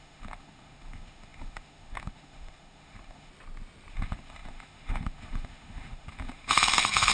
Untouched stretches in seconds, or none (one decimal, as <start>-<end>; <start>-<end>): 3.3-3.9